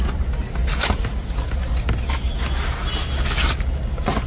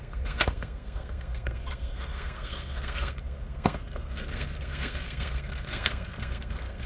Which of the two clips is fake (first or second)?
second